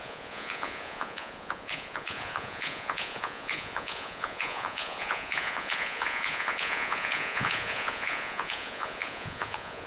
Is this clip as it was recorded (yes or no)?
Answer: no